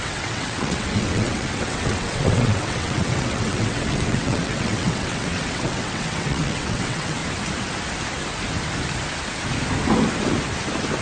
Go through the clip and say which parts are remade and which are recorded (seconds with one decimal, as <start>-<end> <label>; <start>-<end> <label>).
0.0-7.2 remade; 7.2-11.0 recorded